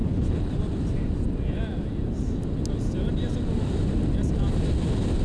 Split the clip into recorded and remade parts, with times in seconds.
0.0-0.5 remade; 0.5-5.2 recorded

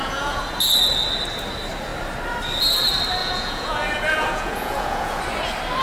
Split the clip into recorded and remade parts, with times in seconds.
0.0-0.6 remade; 0.6-3.2 recorded; 3.2-5.2 remade; 5.2-5.8 recorded

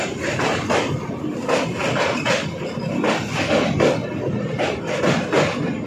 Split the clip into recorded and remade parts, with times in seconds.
0.0-4.0 recorded; 4.0-4.8 remade; 4.8-5.9 recorded

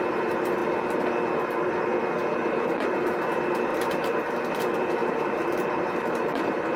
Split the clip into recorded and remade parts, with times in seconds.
0.0-0.6 remade; 0.6-2.5 recorded; 2.5-6.8 remade